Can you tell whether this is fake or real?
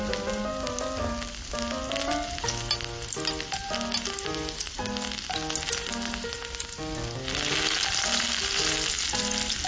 real